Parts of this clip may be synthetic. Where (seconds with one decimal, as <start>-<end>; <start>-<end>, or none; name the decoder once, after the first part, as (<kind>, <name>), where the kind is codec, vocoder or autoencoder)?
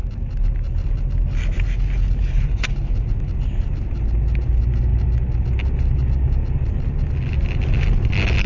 none